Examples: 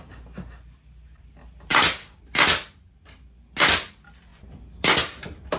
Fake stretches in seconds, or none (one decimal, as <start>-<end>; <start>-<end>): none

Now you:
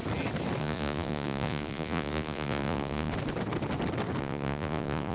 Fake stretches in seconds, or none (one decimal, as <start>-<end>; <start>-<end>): 0.6-3.1; 4.2-5.1

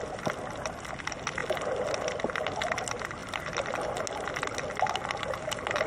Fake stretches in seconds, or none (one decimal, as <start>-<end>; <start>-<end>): none

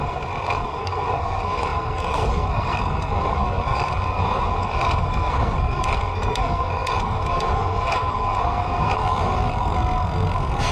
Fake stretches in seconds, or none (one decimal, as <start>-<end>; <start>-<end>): 0.0-10.7